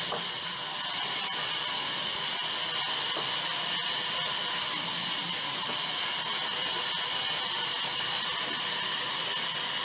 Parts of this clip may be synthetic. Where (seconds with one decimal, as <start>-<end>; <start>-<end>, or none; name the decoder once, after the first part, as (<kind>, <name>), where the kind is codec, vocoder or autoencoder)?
none